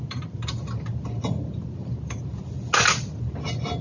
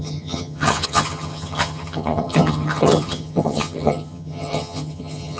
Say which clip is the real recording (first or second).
first